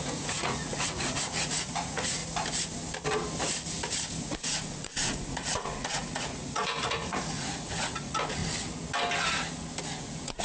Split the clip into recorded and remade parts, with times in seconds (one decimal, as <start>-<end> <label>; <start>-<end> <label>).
0.0-2.2 remade; 2.2-4.2 recorded; 4.2-8.4 remade; 8.4-9.8 recorded; 9.8-10.4 remade